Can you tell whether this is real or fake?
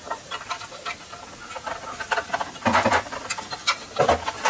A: real